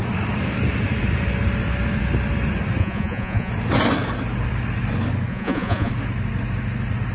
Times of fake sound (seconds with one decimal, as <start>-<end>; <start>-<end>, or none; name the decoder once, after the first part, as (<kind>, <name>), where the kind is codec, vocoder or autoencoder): 2.8-3.5 (vocoder, Vocos); 5.3-5.9